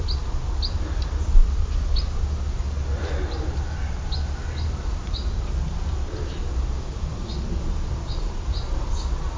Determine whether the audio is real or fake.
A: real